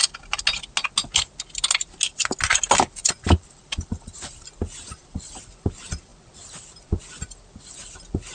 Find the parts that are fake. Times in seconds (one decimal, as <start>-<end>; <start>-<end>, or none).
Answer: 3.0-5.2